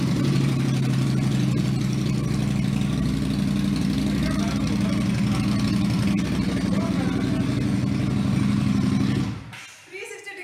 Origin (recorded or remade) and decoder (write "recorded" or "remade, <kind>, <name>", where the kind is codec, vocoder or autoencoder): recorded